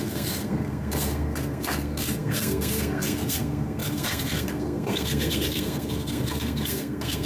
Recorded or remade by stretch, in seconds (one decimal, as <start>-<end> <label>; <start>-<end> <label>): 0.0-7.3 remade